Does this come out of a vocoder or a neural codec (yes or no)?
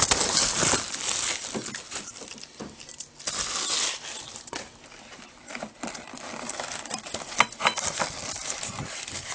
no